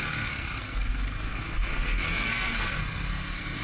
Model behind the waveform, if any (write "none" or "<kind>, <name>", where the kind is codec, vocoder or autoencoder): codec, SNAC